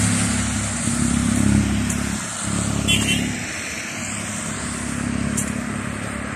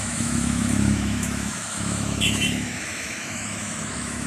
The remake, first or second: second